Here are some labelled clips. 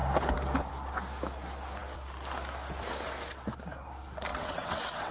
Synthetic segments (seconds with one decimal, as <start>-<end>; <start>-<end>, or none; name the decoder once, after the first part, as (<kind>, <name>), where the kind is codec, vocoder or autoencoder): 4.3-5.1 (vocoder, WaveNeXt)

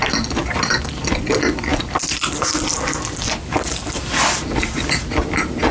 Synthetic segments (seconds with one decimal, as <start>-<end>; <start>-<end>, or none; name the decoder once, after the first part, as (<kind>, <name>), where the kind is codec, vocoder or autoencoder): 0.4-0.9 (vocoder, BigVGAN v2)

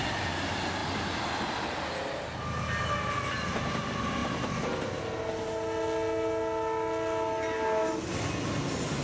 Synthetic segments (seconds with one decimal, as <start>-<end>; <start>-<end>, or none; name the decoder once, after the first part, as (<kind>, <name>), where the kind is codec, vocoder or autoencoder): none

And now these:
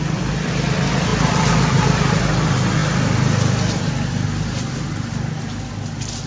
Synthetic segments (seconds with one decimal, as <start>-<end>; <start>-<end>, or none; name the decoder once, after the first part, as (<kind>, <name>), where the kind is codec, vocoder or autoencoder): none

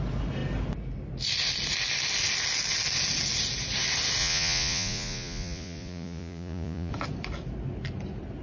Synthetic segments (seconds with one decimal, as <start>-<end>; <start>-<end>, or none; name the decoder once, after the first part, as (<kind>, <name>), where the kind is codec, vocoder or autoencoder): 4.2-6.9 (vocoder, Vocos)